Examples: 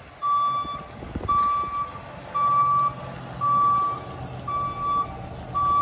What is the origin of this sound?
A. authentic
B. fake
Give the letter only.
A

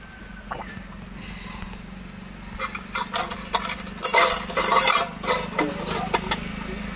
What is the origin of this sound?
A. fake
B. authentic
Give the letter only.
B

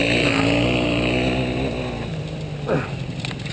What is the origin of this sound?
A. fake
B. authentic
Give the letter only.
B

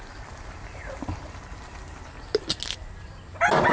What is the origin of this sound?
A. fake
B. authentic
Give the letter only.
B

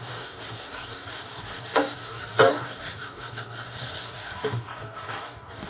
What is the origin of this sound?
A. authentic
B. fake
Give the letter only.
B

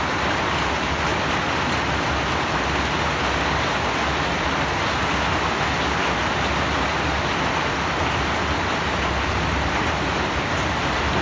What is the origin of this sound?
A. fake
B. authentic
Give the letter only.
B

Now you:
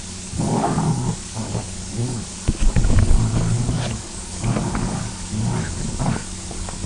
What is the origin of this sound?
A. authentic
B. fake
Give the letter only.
B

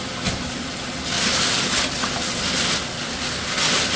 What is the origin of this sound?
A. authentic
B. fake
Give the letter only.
A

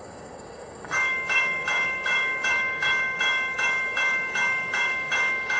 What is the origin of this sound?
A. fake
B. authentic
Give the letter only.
A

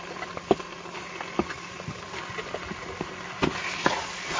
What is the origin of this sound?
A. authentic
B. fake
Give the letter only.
A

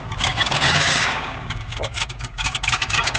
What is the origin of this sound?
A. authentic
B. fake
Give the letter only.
B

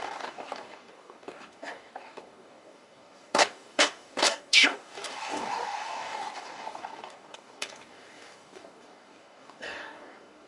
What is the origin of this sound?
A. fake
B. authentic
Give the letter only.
A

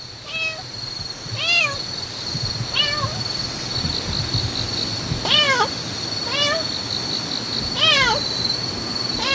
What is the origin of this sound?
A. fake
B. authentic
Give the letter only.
B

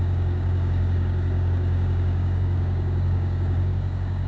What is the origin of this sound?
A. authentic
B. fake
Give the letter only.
B